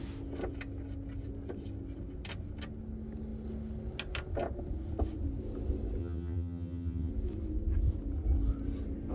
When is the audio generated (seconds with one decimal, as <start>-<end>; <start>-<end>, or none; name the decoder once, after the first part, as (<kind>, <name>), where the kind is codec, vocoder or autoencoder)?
6.0-7.1 (vocoder, HiFi-GAN)